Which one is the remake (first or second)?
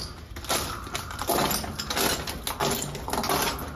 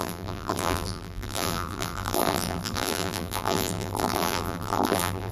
second